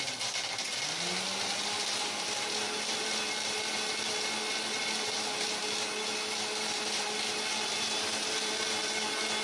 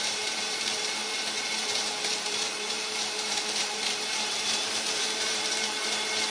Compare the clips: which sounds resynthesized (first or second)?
second